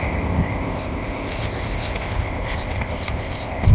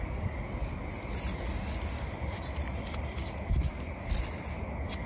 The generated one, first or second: first